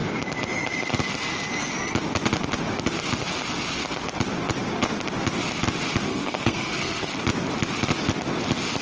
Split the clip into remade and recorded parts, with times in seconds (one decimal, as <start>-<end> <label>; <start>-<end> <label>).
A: 0.0-6.1 recorded; 6.1-7.1 remade; 7.1-8.8 recorded